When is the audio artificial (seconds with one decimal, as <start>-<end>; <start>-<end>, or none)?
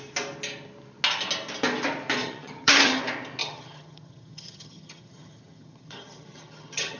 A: 2.2-3.0; 3.4-7.0